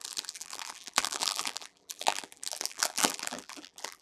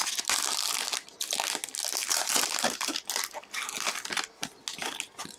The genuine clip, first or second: second